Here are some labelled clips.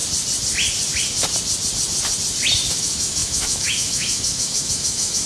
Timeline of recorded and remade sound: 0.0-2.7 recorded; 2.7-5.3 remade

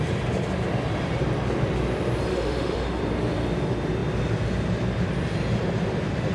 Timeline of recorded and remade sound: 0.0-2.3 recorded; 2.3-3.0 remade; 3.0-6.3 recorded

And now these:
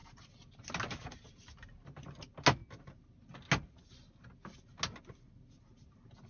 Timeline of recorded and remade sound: 0.0-6.3 recorded

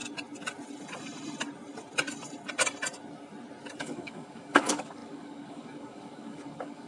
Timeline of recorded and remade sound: 0.0-3.8 recorded; 3.8-6.9 remade